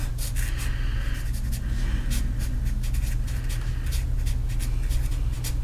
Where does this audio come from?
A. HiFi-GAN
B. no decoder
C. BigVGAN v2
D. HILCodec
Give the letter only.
B